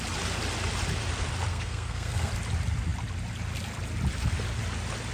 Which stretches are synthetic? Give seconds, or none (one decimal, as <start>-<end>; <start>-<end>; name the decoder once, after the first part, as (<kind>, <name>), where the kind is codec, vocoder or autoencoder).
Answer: 1.5-2.3 (codec, SNAC)